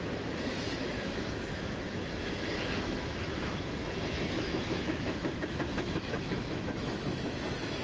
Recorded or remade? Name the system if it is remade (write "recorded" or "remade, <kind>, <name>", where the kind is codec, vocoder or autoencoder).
remade, autoencoder, DAC-VAE